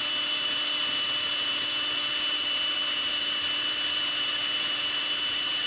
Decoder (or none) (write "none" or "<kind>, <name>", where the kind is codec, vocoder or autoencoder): vocoder, BigVGAN v2